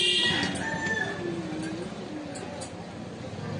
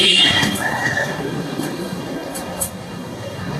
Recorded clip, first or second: first